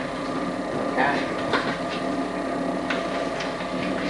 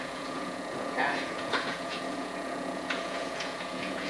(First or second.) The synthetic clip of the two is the second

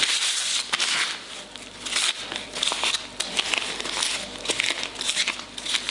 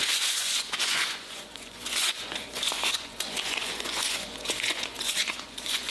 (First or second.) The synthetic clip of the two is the second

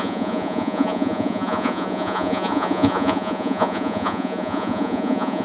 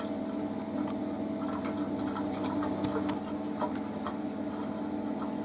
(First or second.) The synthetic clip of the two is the first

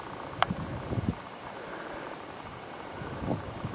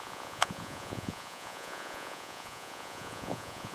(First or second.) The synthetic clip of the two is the second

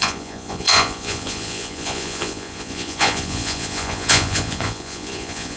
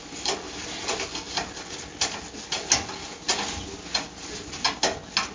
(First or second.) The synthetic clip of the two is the first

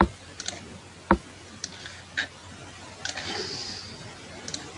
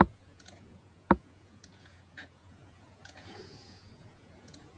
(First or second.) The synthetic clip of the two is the second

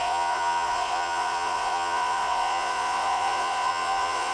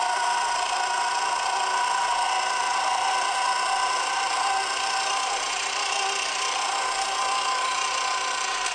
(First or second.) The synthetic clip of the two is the first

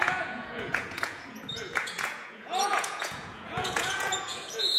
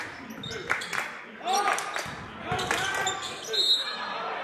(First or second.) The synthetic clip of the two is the first